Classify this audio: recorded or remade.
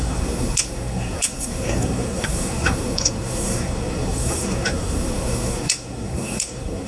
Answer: remade